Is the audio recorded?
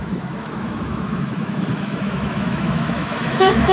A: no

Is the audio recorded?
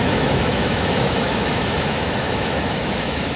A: no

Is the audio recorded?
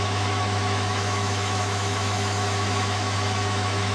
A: no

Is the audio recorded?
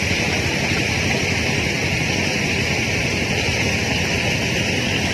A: yes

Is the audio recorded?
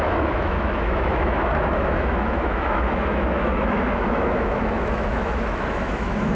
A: no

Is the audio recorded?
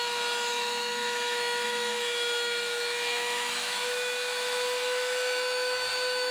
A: no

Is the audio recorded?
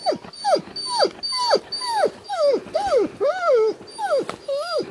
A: yes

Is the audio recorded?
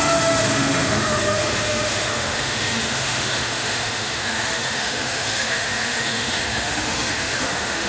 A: no